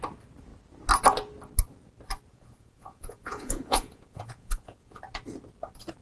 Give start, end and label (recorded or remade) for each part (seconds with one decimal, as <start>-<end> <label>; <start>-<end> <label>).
0.0-2.3 recorded; 2.3-5.0 remade; 5.0-6.0 recorded